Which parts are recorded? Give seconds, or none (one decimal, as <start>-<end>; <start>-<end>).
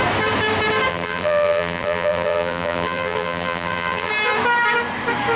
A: 0.0-0.9; 4.1-5.4